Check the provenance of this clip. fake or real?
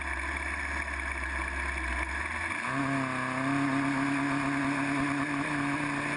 real